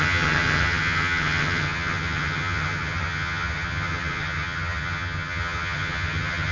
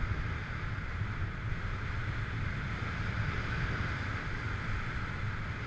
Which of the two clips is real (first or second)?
second